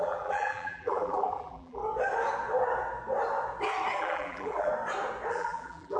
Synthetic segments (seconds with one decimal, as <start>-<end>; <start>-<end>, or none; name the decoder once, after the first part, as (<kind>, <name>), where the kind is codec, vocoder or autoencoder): 0.0-1.8 (vocoder, BigVGAN v2); 4.0-4.7; 5.3-6.0